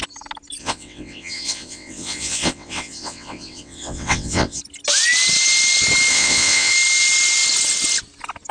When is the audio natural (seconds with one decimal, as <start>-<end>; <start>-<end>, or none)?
0.0-0.6; 4.6-6.1; 6.7-8.5